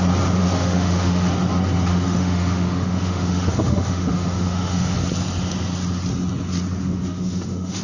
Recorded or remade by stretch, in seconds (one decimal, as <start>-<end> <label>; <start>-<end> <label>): 0.0-0.4 recorded; 0.4-1.3 remade; 1.3-1.9 recorded; 1.9-4.9 remade; 4.9-6.8 recorded; 6.8-7.8 remade